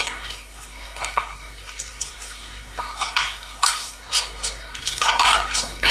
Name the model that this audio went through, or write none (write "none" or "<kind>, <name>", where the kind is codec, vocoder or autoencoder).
codec, SNAC